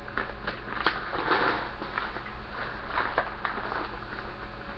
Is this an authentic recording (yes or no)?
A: yes